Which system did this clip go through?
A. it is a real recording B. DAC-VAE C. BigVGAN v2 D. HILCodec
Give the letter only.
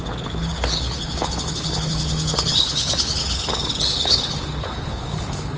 D